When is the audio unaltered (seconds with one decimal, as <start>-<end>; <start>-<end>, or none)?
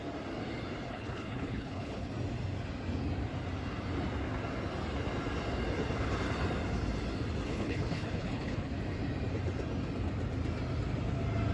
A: 0.0-0.9; 2.1-7.5; 8.7-11.5